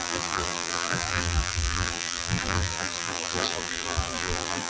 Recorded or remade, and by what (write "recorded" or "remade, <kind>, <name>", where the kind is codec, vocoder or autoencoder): remade, vocoder, BigVGAN v2